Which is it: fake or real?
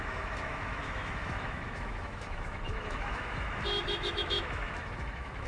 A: fake